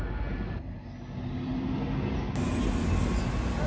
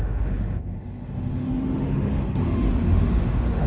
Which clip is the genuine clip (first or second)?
first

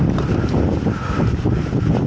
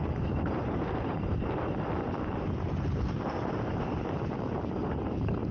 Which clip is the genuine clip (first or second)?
first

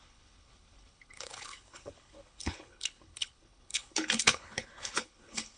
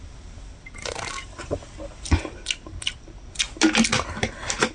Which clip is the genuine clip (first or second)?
second